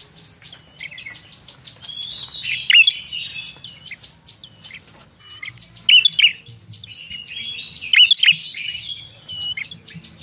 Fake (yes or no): no